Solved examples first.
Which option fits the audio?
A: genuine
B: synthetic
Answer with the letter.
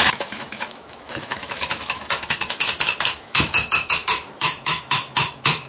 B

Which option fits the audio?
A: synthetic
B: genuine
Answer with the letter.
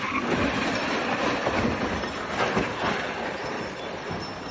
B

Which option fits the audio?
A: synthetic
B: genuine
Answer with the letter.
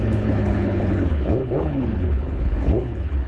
A